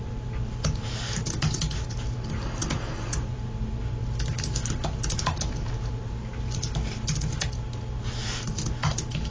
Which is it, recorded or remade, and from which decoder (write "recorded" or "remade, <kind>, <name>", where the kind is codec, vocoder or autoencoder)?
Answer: recorded